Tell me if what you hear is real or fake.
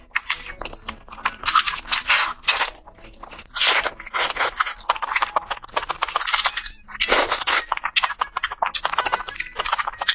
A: real